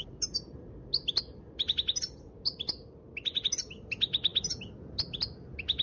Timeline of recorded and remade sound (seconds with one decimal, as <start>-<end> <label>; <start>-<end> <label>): 0.0-5.8 recorded